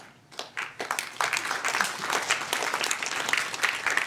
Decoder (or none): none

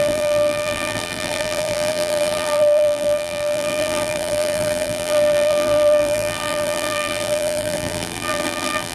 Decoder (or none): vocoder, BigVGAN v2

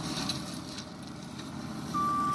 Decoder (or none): none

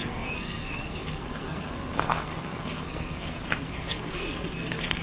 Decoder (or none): codec, SNAC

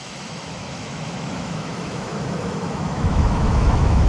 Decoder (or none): autoencoder, DAC-VAE